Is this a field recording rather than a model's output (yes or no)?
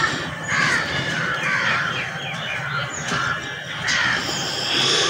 yes